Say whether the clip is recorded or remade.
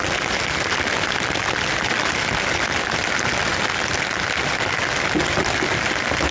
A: recorded